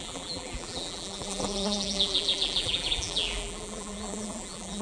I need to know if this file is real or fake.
fake